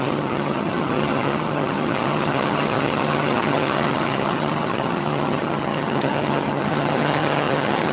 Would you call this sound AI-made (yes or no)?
yes